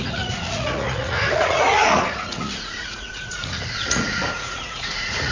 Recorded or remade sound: remade